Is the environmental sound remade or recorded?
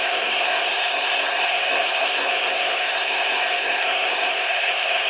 remade